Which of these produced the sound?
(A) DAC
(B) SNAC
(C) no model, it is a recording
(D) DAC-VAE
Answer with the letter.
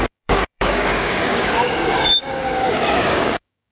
A